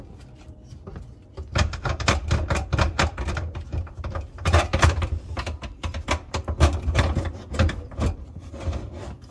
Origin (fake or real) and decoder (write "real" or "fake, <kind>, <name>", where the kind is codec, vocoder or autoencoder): fake, vocoder, BigVGAN v2